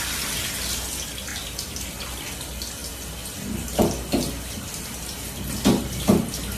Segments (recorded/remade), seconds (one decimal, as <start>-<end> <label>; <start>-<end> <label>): 0.0-6.6 recorded